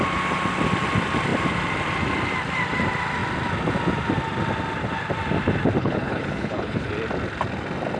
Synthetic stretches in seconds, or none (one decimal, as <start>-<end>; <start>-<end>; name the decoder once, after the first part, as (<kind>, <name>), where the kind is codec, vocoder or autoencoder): 5.8-6.9 (codec, HILCodec)